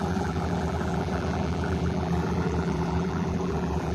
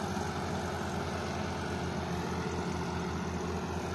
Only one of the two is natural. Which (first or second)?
second